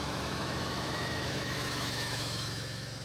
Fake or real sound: fake